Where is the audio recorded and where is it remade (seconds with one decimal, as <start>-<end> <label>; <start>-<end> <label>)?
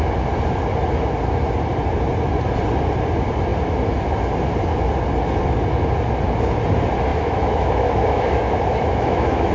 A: 0.0-7.1 recorded; 7.1-9.5 remade